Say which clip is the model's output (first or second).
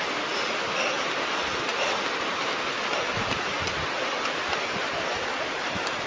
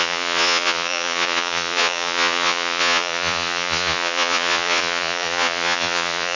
second